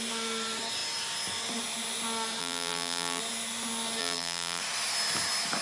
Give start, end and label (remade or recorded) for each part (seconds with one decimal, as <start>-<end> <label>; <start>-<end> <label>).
0.0-2.4 recorded; 2.4-3.2 remade; 3.2-4.0 recorded; 4.0-4.6 remade; 4.6-5.6 recorded